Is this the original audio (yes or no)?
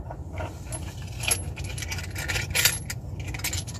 yes